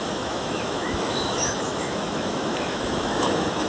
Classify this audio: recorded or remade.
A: remade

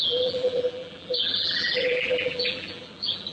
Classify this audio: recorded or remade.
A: remade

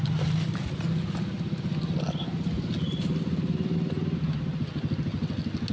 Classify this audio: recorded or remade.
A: recorded